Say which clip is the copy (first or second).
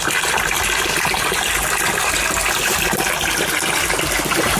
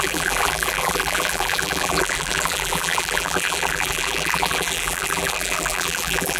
second